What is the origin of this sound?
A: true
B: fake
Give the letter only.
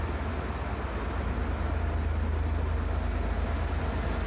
A